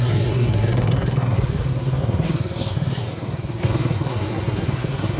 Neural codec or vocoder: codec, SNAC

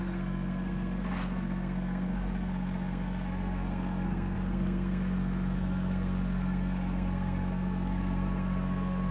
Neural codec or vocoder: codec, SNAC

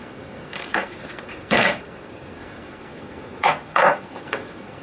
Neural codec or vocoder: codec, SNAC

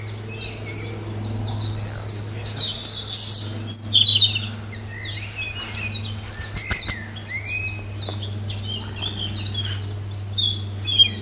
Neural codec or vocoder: none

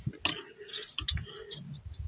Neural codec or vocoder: none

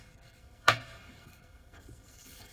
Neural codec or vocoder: codec, SNAC